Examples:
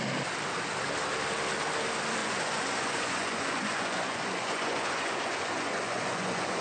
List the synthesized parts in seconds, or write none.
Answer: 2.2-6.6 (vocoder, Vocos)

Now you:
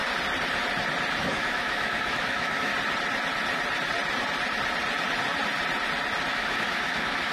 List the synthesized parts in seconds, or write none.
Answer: 1.2-2.7 (autoencoder, DAC-VAE); 6.3-7.3

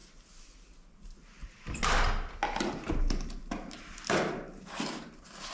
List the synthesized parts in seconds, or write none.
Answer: none

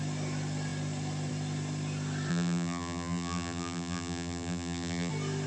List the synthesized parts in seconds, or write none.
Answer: 2.3-5.1 (vocoder, BigVGAN v2)

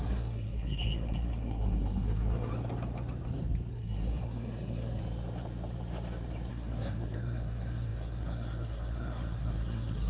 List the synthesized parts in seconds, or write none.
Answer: 0.0-2.5 (codec, SNAC); 3.7-5.0; 6.5-10.1